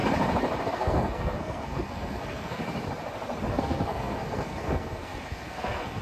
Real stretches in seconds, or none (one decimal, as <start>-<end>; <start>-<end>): 0.0-0.7; 2.6-3.5